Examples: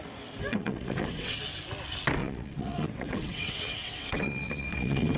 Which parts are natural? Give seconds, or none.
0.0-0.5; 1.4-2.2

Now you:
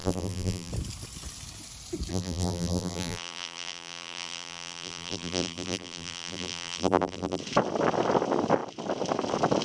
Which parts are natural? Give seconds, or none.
0.7-2.1; 7.4-9.6

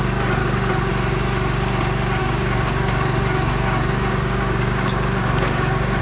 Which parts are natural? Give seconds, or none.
0.0-0.4; 0.9-2.2

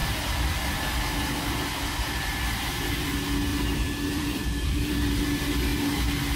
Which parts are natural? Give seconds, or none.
1.0-3.5; 4.9-6.4

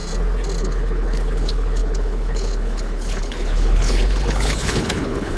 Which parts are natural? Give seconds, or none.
0.0-0.6

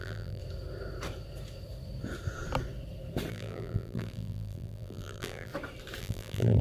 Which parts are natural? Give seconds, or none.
0.4-3.3; 5.5-6.0

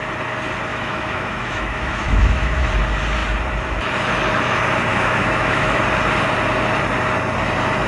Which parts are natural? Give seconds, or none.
0.0-0.7; 2.7-4.9; 5.8-7.9